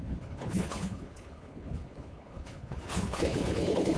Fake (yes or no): yes